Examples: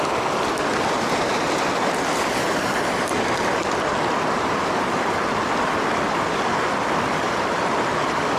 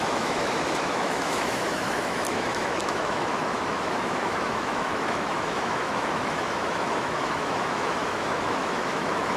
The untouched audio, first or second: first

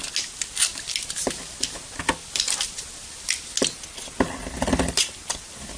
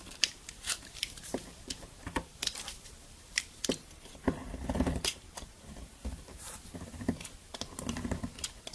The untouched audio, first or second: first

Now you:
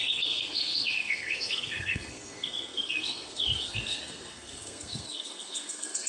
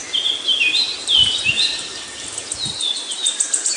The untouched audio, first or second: second